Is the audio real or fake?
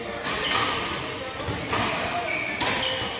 real